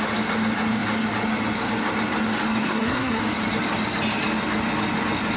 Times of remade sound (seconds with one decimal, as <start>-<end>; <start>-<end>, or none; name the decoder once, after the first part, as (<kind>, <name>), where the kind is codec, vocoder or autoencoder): 2.6-3.2 (codec, SNAC)